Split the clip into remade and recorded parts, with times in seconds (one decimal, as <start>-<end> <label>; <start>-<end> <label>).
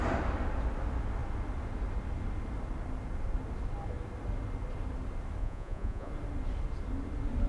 0.0-5.4 recorded; 5.4-6.1 remade; 6.1-7.5 recorded